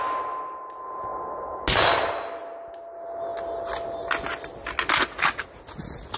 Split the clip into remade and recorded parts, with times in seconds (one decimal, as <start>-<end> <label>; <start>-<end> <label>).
0.0-6.2 recorded